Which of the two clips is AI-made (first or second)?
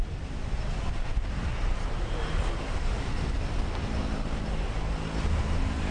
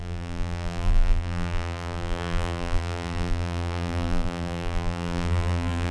second